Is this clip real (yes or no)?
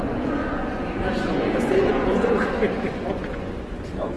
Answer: no